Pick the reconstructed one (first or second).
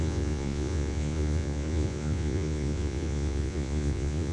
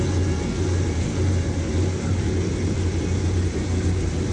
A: first